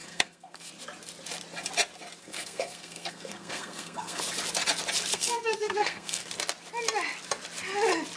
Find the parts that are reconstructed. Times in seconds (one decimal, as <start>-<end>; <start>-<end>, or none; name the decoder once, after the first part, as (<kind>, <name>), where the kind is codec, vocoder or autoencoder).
0.0-0.7 (codec, SNAC); 2.2-4.2; 5.1-6.3